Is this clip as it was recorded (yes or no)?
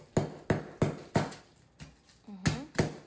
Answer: yes